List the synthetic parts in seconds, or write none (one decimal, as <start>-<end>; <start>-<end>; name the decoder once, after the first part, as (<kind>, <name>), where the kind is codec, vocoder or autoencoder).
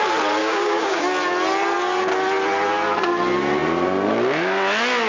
0.4-1.0 (codec, DAC)